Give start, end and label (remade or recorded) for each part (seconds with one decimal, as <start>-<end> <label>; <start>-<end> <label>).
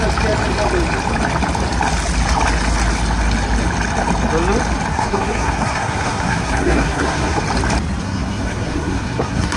0.0-4.9 recorded; 4.9-7.4 remade; 7.4-8.0 recorded; 8.0-9.6 remade